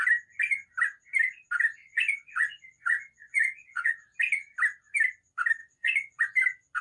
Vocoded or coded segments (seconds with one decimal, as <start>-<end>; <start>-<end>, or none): 1.8-3.9; 5.6-6.2